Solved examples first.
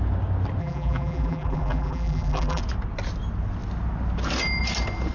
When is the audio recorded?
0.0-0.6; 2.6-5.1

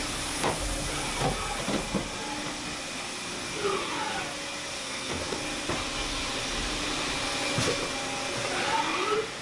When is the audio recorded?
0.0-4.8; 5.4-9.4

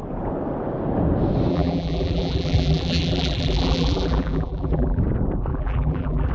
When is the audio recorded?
0.0-1.5; 5.0-5.5

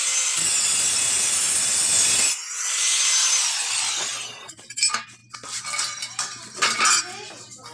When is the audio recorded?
0.0-7.7